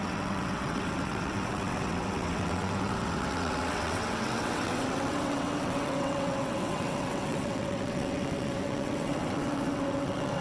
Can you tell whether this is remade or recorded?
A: remade